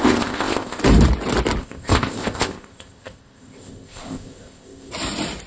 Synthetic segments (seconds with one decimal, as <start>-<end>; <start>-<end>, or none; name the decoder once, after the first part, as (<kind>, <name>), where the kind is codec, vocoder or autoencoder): 0.0-0.8 (codec, ZipCodec); 1.6-4.9